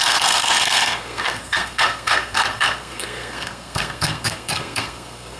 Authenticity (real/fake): fake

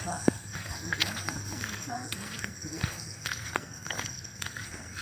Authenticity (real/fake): fake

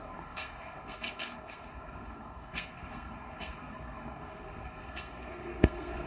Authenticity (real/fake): fake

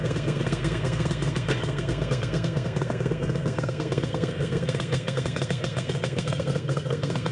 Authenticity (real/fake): fake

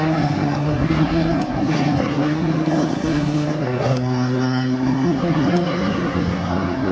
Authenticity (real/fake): fake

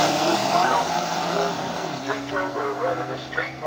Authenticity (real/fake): fake